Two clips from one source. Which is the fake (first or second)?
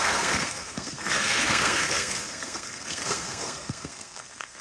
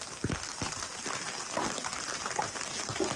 first